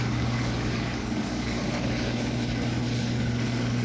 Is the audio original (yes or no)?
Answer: no